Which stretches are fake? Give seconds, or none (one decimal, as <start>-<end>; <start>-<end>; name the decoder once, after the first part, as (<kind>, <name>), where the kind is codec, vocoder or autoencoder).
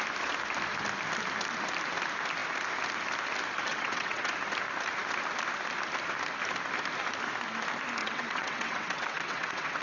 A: 3.7-4.3 (vocoder, WaveNeXt); 8.0-9.8